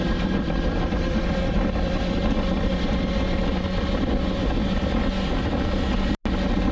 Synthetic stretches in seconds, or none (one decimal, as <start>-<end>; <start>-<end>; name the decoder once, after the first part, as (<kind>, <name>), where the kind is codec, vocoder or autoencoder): 0.0-2.7 (vocoder, BigVGAN v2)